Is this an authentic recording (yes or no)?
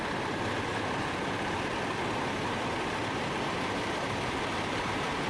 yes